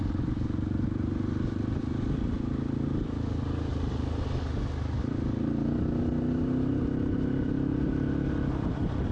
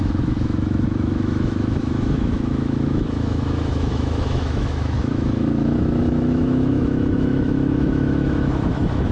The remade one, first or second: second